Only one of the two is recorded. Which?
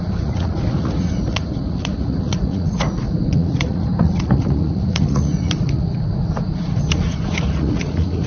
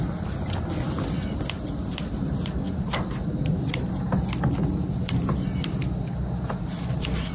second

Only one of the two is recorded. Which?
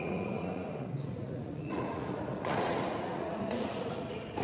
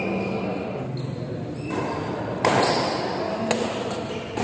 second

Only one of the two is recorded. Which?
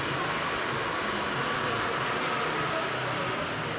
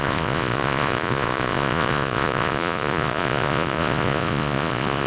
first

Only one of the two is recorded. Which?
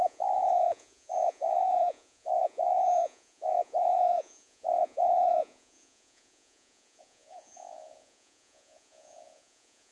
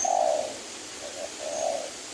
second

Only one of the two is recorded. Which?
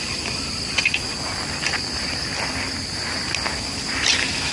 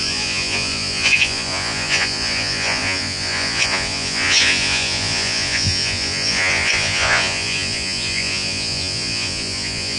first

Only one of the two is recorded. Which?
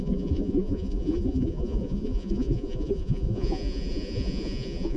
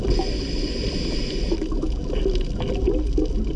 second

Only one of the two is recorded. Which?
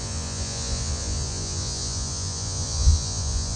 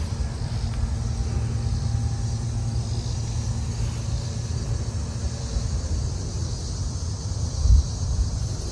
second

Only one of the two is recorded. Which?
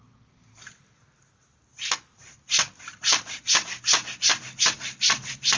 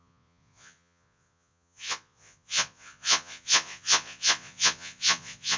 first